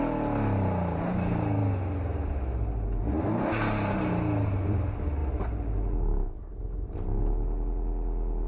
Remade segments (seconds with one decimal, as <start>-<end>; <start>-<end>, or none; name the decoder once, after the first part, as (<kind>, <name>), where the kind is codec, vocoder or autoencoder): none